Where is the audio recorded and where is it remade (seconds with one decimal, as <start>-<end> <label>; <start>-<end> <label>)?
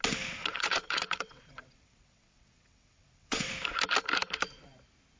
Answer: 0.0-0.4 recorded; 0.4-3.5 remade; 3.5-5.2 recorded